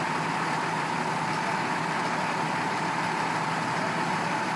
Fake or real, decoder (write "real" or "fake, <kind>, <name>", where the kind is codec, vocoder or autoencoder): real